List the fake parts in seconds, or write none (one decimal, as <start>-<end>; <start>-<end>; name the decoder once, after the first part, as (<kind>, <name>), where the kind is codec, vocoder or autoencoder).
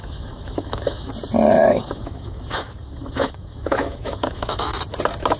0.0-1.1 (autoencoder, DAC-VAE); 1.6-4.8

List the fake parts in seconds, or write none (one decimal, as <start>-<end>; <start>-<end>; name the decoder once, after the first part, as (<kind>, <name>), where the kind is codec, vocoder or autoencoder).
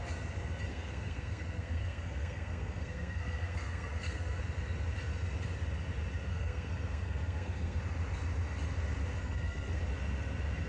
0.7-4.4 (codec, SNAC); 6.3-7.8; 9.2-9.8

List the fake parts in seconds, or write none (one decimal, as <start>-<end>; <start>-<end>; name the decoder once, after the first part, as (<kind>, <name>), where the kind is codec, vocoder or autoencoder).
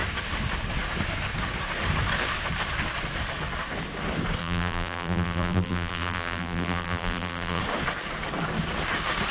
4.4-7.6 (vocoder, BigVGAN v2)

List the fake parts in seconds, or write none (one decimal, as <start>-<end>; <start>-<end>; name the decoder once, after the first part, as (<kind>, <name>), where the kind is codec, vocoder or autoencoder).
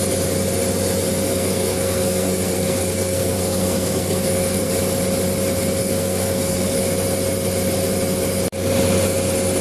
1.3-4.7 (codec, SNAC); 5.8-6.8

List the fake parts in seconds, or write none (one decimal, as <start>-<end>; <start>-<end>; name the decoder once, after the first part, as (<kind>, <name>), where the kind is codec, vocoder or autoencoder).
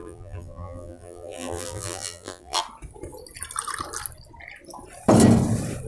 0.0-2.6 (vocoder, BigVGAN v2)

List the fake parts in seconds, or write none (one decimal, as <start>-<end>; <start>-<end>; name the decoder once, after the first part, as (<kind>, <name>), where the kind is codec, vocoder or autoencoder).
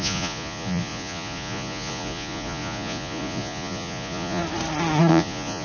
0.0-4.4 (vocoder, Vocos); 5.1-5.6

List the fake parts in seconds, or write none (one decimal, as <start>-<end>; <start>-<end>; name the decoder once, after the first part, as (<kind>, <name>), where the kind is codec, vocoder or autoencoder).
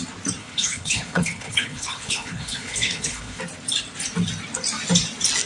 0.4-3.4 (codec, HILCodec)